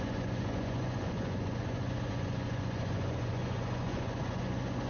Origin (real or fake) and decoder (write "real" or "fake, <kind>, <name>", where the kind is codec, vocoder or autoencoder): fake, vocoder, Vocos